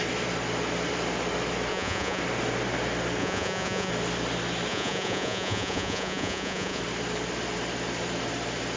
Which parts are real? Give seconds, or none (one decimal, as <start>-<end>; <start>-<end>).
0.0-1.7; 2.2-3.2; 3.9-4.7; 6.8-8.8